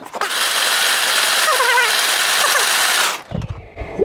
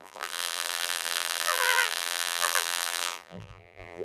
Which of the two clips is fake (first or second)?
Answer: second